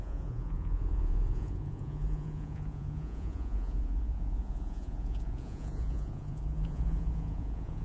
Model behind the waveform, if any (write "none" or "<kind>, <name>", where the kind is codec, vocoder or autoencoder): vocoder, Vocos